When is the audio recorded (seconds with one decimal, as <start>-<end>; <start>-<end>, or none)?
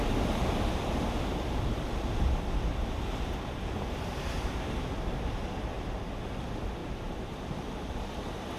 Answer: 0.0-6.8; 8.2-8.6